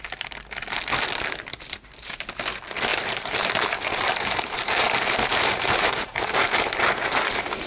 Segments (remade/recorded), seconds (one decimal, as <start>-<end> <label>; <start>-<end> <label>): 0.0-2.9 recorded; 2.9-7.7 remade